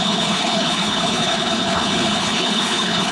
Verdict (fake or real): fake